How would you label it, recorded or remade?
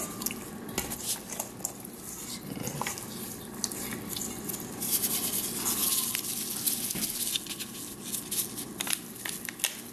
recorded